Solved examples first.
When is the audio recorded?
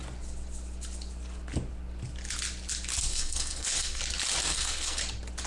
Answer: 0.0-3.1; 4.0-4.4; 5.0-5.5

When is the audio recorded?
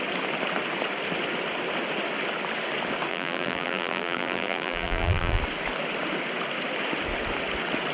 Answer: 0.0-3.1; 5.4-7.9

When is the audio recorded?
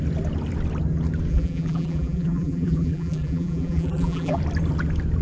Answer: 0.0-1.3; 4.4-5.2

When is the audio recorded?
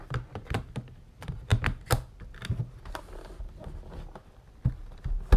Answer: 0.0-5.4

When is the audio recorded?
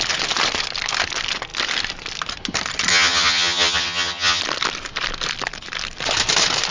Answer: 0.0-2.9; 4.4-6.7